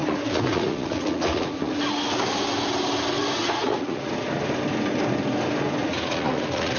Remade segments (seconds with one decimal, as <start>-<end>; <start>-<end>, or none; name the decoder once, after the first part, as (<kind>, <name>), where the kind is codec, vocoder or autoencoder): 0.0-1.8 (vocoder, Vocos); 3.4-4.1; 5.8-6.8